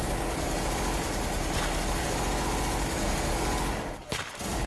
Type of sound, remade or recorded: remade